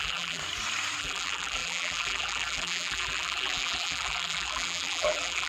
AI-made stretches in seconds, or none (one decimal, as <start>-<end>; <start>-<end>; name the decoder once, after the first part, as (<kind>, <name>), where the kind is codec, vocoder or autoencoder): 0.0-0.4 (vocoder, BigVGAN v2); 1.0-5.5